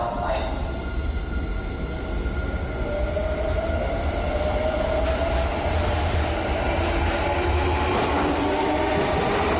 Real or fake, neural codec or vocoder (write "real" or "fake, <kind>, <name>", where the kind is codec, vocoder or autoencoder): real